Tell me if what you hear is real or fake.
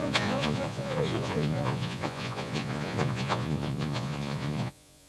fake